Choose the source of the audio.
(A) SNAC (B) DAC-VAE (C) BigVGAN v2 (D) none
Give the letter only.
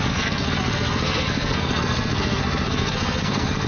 A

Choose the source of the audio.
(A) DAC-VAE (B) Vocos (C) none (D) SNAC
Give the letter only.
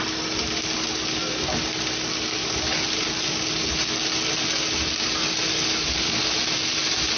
C